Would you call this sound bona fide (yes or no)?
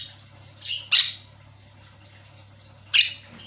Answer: yes